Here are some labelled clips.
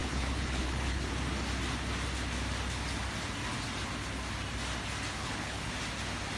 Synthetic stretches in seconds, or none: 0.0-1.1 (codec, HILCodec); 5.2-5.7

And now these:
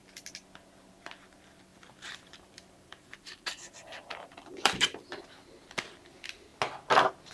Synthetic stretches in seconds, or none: 1.7-5.5 (vocoder, BigVGAN v2)

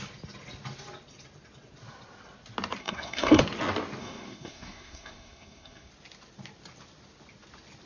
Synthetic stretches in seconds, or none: 2.8-3.4 (codec, SNAC); 4.0-5.9

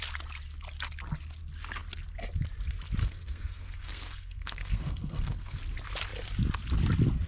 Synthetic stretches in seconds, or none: 3.0-5.6 (codec, SNAC)